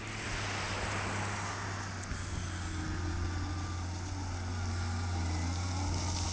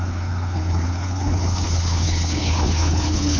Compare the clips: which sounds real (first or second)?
first